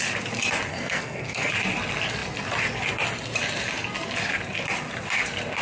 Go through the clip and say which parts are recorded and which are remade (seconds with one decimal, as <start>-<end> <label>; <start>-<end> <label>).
0.0-0.7 recorded; 0.7-1.5 remade; 1.5-5.6 recorded